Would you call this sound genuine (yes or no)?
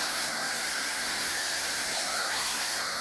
no